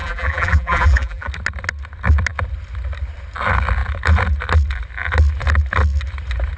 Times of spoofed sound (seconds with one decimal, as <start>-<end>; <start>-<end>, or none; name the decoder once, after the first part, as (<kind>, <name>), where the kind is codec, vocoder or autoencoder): 0.0-1.3 (vocoder, BigVGAN v2)